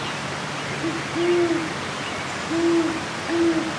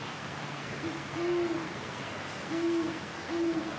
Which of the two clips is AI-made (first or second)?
second